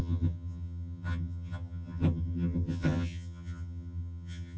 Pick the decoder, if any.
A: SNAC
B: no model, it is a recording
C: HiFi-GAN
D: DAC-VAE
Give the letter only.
C